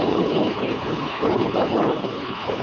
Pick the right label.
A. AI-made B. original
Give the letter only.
A